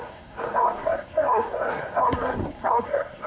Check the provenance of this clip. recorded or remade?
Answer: remade